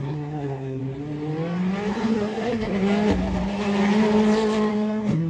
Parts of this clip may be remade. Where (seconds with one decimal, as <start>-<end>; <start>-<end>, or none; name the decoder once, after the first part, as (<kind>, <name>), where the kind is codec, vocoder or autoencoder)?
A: 0.0-0.8 (codec, SNAC); 1.9-2.7; 4.7-5.3